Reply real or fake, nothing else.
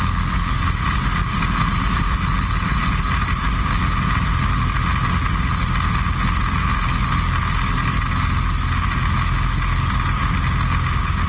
real